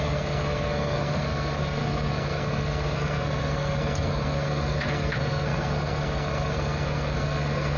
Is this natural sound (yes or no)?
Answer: no